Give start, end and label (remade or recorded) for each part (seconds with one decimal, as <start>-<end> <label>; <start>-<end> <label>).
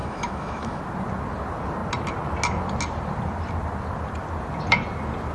0.0-0.8 remade; 0.8-5.3 recorded